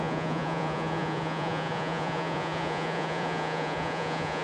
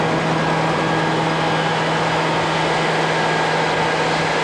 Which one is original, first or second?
second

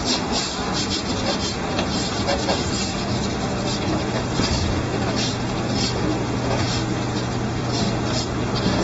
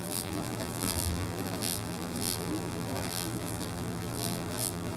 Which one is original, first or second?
first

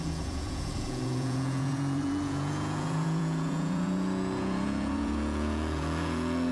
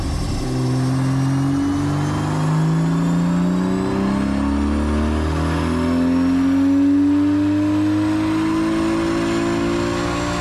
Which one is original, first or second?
second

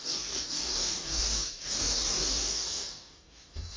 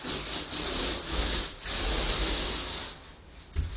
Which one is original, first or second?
second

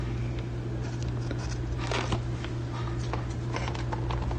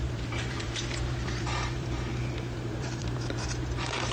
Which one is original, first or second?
first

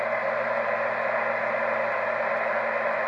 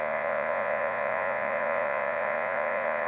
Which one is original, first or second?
first